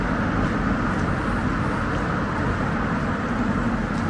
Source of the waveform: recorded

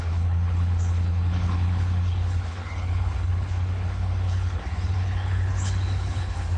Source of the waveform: remade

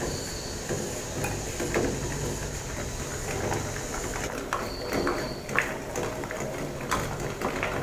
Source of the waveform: recorded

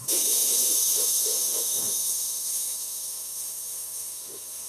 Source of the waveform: remade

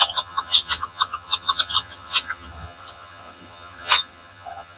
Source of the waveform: remade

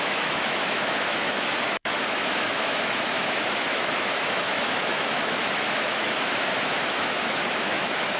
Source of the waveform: remade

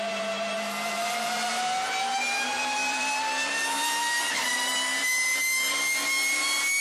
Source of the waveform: remade